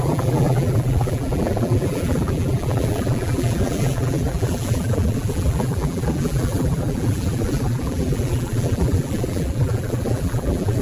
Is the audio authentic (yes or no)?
no